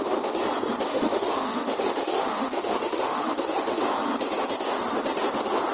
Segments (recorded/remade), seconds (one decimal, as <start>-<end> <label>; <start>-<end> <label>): 0.0-0.9 recorded; 0.9-3.8 remade; 3.8-5.7 recorded